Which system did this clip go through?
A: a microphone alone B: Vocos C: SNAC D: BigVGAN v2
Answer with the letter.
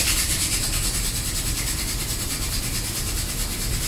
A